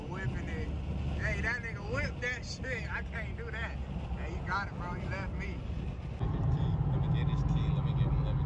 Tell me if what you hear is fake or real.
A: real